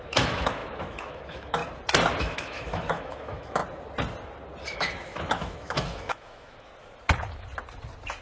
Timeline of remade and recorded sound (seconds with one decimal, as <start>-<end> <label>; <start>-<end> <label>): 0.0-1.6 remade; 1.6-2.2 recorded; 2.2-3.6 remade; 3.6-4.6 recorded; 4.6-6.7 remade; 6.7-8.2 recorded

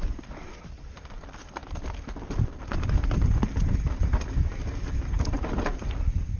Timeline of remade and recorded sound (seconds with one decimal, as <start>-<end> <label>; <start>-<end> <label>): 0.0-6.4 recorded